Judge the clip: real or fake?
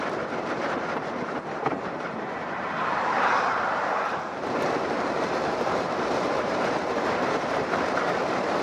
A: fake